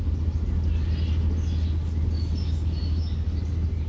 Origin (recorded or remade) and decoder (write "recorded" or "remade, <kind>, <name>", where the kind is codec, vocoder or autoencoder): recorded